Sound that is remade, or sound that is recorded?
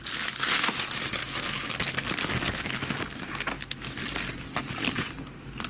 recorded